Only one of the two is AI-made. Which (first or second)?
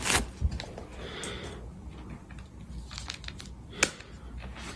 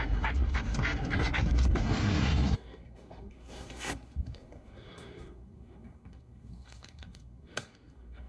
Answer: second